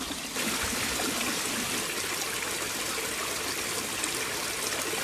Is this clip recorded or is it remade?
recorded